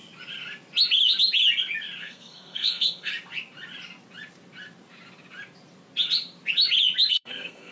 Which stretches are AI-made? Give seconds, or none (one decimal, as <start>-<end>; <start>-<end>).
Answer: 2.0-3.1; 7.1-7.7